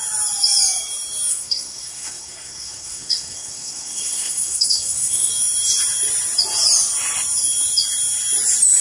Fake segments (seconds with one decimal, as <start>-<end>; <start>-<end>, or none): 1.3-5.3